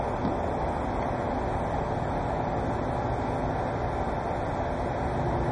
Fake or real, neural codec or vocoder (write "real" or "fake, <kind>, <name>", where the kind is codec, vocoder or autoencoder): real